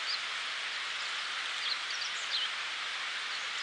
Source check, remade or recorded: recorded